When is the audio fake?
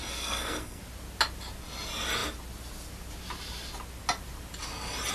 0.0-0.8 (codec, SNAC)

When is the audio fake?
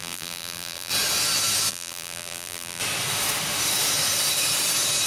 0.0-0.9 (vocoder, BigVGAN v2); 1.7-2.8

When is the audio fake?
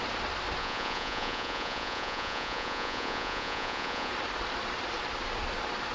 0.6-4.1 (vocoder, Vocos)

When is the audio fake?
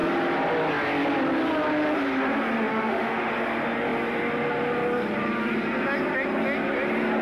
2.7-3.3 (autoencoder, DAC-VAE)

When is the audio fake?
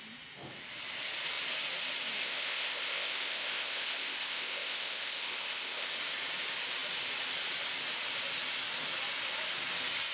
2.2-5.9 (codec, ZipCodec)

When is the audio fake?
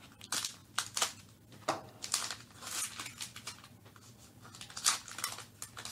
none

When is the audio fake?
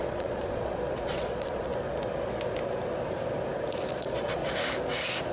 0.0-1.7 (vocoder, Vocos); 3.9-4.4